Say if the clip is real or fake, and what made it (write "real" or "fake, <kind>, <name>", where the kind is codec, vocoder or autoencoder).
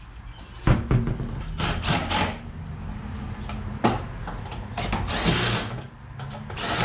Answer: real